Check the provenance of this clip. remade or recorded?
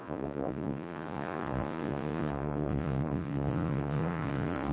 remade